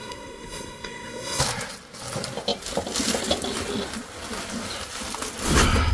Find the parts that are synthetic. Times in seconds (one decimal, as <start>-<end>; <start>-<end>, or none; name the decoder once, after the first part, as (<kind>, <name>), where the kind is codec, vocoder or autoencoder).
0.0-1.4 (codec, SNAC)